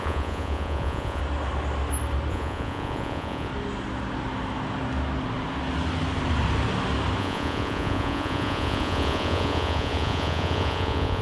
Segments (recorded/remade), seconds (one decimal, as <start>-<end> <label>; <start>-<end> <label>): 0.0-1.2 remade; 1.2-2.3 recorded; 2.3-3.5 remade; 3.5-7.2 recorded; 7.2-11.2 remade